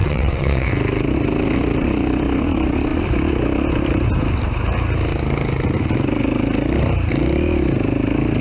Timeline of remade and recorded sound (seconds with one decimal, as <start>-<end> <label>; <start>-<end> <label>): 0.0-0.7 remade; 0.7-8.4 recorded